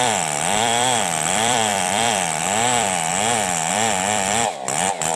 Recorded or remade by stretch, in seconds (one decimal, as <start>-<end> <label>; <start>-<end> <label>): 0.0-3.1 remade; 3.1-3.7 recorded; 3.7-5.2 remade